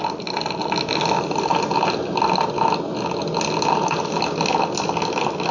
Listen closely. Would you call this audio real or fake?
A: real